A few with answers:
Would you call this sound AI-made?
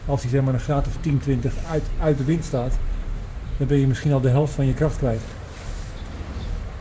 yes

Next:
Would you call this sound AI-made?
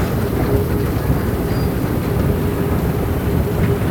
no